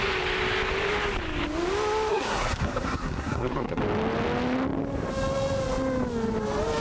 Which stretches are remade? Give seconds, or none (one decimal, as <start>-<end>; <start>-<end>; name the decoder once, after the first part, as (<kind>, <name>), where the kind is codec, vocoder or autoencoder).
2.1-3.8 (codec, SNAC)